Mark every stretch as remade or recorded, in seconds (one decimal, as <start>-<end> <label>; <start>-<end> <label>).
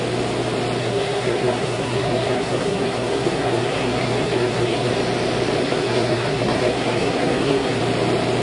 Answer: 0.0-0.8 recorded; 0.8-4.9 remade; 4.9-5.6 recorded; 5.6-7.8 remade; 7.8-8.4 recorded